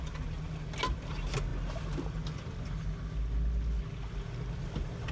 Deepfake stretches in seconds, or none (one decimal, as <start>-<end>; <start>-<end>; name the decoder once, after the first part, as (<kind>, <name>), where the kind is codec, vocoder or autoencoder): none